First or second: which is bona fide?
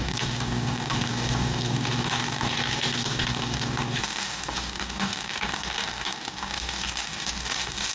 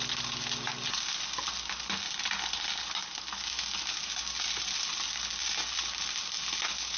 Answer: second